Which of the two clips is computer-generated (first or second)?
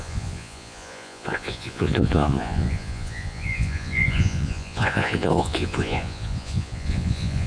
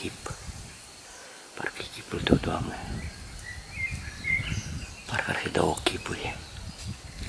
first